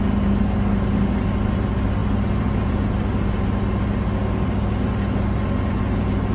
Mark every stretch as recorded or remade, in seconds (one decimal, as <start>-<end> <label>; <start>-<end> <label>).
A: 0.0-6.3 recorded

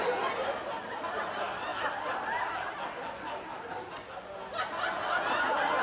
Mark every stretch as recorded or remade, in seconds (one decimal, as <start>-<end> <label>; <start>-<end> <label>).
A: 0.0-5.8 recorded

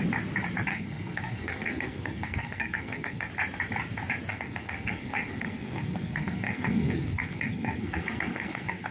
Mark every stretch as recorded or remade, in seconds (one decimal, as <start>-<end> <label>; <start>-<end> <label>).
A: 0.0-0.7 recorded; 0.7-3.3 remade; 3.3-4.3 recorded; 4.3-8.9 remade

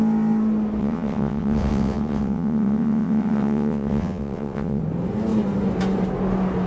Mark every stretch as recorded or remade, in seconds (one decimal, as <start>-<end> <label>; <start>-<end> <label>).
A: 0.0-0.8 recorded; 0.8-4.8 remade; 4.8-6.7 recorded

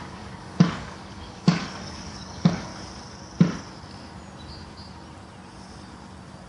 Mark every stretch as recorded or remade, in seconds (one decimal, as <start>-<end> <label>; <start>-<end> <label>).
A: 0.0-2.7 remade; 2.7-6.5 recorded

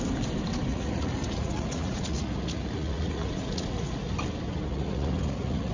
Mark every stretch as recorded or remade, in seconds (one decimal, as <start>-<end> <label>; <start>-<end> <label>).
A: 0.0-0.7 recorded; 0.7-4.1 remade; 4.1-4.7 recorded; 4.7-5.7 remade

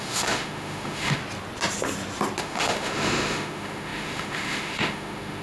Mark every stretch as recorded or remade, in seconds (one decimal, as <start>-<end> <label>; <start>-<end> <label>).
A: 0.0-1.2 remade; 1.2-2.4 recorded; 2.4-5.4 remade

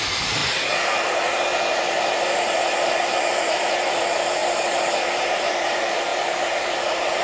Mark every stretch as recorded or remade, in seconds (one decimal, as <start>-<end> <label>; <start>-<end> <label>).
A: 0.0-0.4 remade; 0.4-1.0 recorded; 1.0-7.2 remade